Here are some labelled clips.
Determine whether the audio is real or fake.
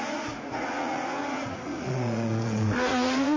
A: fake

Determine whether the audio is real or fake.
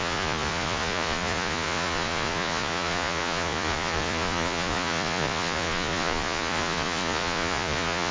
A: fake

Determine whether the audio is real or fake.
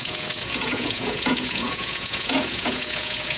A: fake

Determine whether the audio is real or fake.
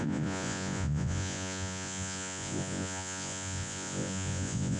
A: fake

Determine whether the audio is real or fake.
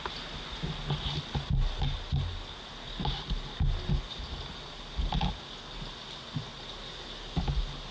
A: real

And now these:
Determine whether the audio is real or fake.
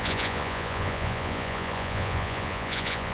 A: fake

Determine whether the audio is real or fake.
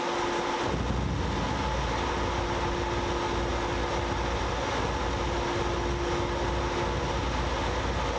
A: real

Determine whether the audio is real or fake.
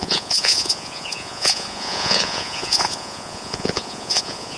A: fake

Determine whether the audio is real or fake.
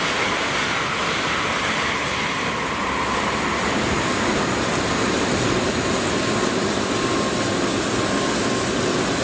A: real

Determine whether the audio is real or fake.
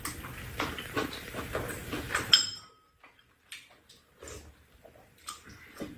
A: real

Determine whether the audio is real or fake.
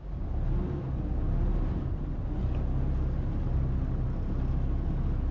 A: real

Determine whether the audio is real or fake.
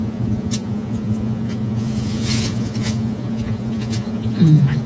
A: fake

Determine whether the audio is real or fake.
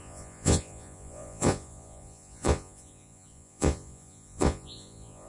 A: fake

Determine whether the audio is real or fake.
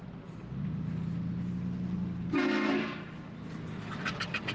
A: real